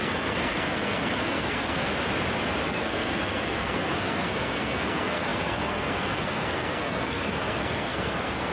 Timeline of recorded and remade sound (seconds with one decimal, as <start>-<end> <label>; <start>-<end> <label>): 0.0-1.9 remade; 1.9-2.6 recorded; 2.6-8.5 remade